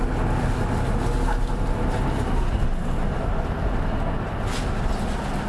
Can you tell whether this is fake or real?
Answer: real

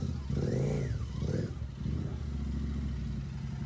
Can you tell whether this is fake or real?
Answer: real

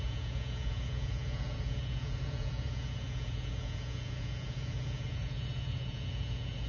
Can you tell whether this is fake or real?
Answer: fake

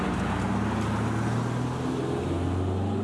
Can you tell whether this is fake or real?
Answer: real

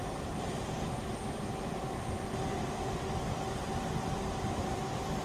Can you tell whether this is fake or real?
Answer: real